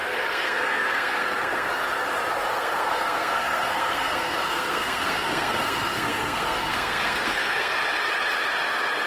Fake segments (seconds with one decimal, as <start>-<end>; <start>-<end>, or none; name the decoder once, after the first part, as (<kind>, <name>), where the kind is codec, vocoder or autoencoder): 0.0-1.7 (codec, SNAC); 2.5-7.7